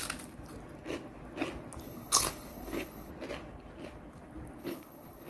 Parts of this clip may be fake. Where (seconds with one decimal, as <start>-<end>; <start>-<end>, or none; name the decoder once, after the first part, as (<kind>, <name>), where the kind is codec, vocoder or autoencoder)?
1.8-3.1 (codec, HILCodec); 4.6-5.3